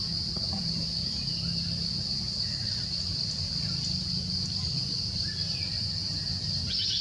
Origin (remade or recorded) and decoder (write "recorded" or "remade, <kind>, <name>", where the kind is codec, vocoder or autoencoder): recorded